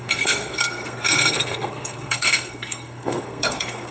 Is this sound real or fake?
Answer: fake